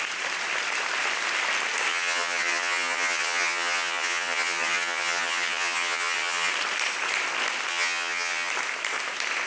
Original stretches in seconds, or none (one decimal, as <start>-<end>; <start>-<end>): 0.0-1.9; 6.5-7.7; 8.5-9.5